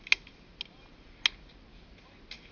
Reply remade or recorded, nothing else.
recorded